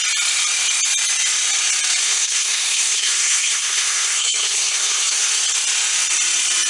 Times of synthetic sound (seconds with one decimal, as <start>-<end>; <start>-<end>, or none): 2.0-5.3